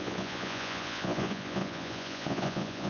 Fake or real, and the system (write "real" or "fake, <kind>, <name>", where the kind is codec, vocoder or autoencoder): fake, vocoder, Vocos